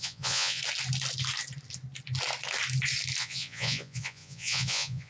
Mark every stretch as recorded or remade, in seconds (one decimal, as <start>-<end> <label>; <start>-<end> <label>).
0.0-0.6 remade; 0.6-3.2 recorded; 3.2-5.1 remade